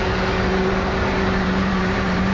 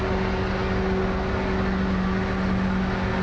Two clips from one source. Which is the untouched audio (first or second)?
second